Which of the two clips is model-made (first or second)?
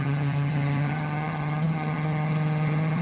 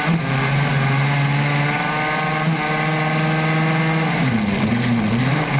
first